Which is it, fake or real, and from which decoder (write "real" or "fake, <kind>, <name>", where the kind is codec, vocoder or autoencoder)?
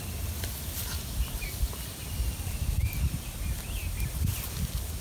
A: real